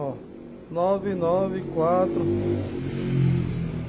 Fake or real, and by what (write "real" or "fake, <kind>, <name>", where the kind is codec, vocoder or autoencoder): real